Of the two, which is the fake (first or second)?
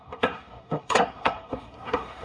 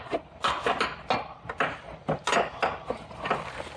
first